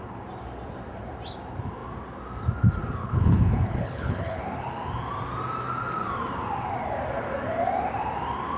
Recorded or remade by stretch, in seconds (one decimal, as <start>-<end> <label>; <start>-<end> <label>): 0.0-3.0 recorded; 3.0-4.4 remade; 4.4-8.6 recorded